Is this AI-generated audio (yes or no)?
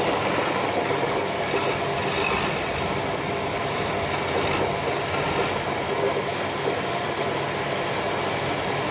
no